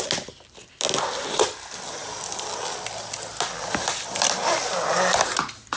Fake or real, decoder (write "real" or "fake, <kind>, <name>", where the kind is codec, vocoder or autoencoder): real